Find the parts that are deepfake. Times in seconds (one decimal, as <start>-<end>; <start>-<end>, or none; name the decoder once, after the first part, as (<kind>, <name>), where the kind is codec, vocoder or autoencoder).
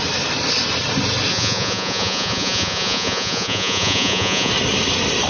1.3-4.5 (vocoder, Vocos)